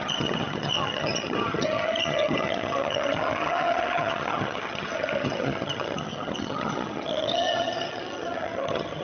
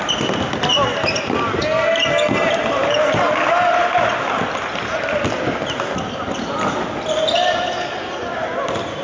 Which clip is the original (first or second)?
second